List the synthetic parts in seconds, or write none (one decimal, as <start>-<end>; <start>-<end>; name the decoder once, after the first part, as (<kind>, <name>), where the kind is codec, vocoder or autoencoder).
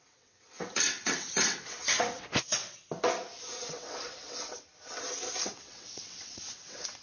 0.0-2.6 (vocoder, WaveNeXt); 3.6-4.7; 5.4-7.0